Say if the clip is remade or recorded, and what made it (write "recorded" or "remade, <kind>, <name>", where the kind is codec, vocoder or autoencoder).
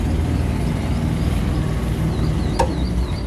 recorded